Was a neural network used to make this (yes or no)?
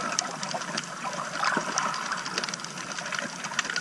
no